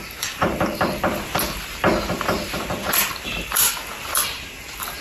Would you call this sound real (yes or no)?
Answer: no